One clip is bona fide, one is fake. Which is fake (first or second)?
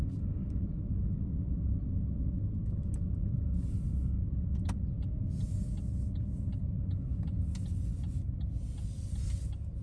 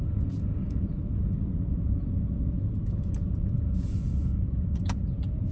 second